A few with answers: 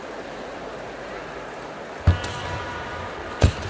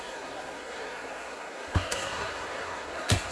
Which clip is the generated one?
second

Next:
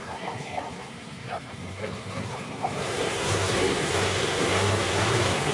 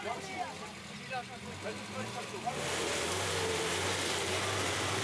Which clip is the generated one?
first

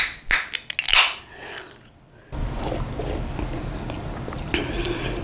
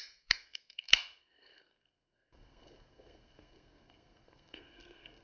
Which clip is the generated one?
second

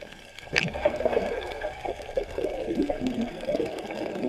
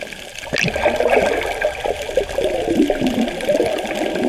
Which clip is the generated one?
first